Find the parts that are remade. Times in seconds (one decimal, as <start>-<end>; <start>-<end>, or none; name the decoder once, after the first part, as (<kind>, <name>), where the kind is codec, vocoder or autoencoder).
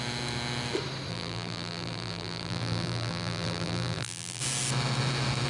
1.1-4.4 (vocoder, BigVGAN v2)